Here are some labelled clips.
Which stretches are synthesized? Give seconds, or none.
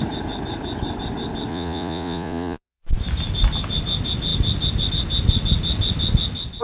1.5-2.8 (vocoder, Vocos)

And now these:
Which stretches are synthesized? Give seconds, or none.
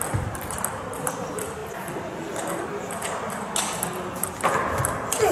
none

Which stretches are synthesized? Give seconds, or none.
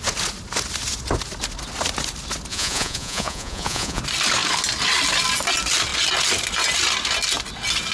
2.5-4.0 (vocoder, Vocos)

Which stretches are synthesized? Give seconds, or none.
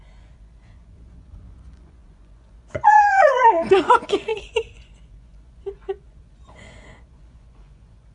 0.0-8.1 (vocoder, Vocos)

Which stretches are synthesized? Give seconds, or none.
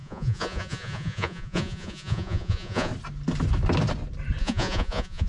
0.0-2.9 (vocoder, Vocos); 4.4-5.3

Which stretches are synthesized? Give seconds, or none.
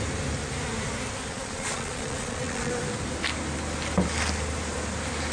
1.3-2.7 (vocoder, Vocos)